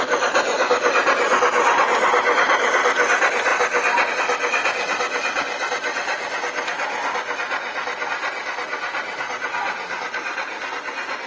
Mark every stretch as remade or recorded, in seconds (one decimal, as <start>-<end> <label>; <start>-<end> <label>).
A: 0.0-11.3 recorded